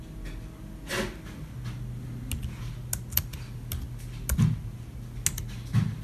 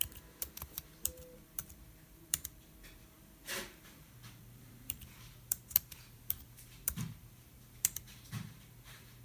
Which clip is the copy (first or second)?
second